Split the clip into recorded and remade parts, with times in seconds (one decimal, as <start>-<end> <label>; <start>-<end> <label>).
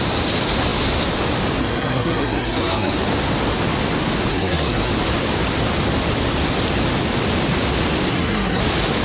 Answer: 0.0-1.6 recorded; 1.6-2.9 remade; 2.9-4.3 recorded; 4.3-4.9 remade; 4.9-8.1 recorded; 8.1-8.6 remade; 8.6-9.0 recorded